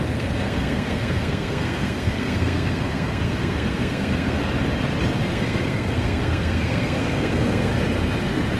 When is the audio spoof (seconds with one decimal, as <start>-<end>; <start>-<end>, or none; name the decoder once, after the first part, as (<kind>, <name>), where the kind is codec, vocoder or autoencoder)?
0.0-4.4 (codec, SNAC); 5.3-7.7